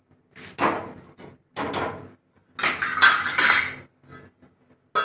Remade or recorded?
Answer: recorded